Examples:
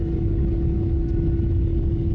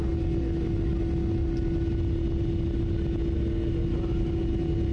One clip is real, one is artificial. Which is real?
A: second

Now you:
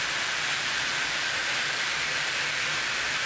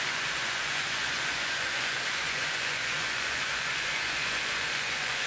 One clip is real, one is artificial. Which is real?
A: first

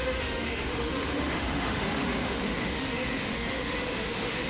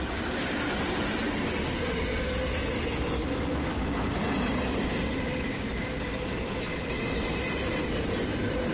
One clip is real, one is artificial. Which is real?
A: second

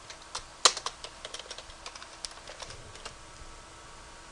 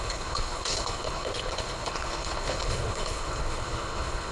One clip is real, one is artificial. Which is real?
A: first